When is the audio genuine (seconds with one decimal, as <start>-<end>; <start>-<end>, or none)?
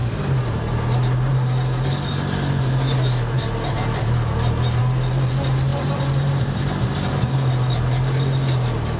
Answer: 0.0-5.7; 6.4-9.0